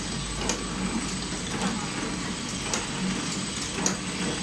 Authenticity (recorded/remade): recorded